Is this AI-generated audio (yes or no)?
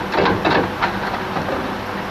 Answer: no